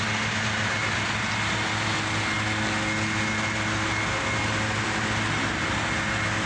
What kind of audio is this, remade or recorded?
recorded